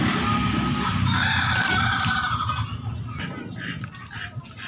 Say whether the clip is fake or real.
real